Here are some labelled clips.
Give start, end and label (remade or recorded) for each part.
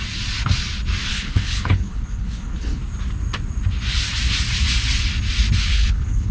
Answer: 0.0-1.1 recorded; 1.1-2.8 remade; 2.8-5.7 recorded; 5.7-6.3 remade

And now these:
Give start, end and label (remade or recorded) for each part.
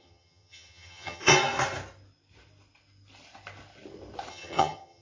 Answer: 0.0-1.3 remade; 1.3-4.3 recorded; 4.3-5.0 remade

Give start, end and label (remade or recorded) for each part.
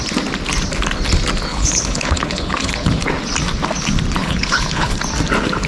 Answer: 0.0-1.5 recorded; 1.5-3.0 remade; 3.0-4.2 recorded; 4.2-5.0 remade; 5.0-5.7 recorded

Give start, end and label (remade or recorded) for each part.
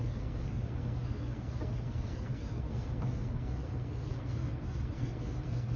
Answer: 0.0-5.8 remade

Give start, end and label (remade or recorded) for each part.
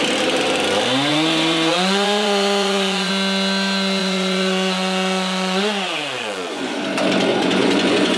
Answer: 0.0-1.1 recorded; 1.1-3.1 remade; 3.1-4.0 recorded; 4.0-6.8 remade; 6.8-7.3 recorded; 7.3-8.2 remade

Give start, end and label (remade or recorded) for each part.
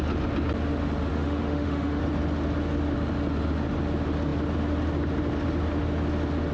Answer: 0.0-1.1 recorded; 1.1-2.0 remade; 2.0-6.5 recorded